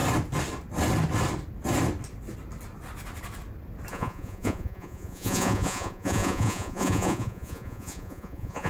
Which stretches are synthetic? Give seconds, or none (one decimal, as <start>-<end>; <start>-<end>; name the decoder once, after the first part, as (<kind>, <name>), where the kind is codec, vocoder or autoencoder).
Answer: 3.9-8.7 (vocoder, Vocos)